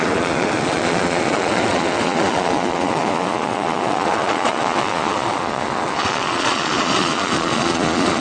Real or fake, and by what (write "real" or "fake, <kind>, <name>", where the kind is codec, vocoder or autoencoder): fake, vocoder, Vocos